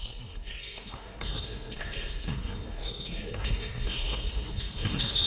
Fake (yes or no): yes